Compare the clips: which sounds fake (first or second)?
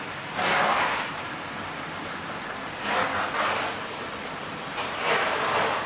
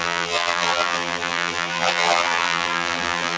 second